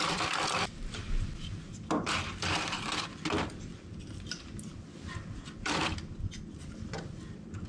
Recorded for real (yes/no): no